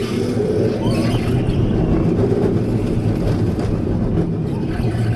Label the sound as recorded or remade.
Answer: recorded